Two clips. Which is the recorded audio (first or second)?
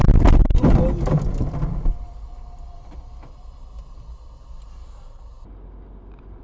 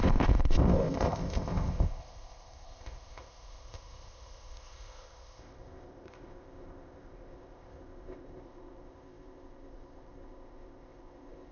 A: first